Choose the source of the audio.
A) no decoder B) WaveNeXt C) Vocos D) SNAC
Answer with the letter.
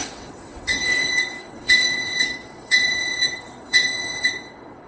B